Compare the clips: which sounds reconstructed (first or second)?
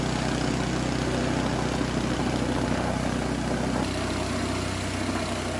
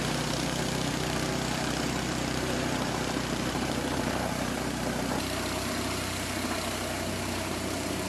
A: second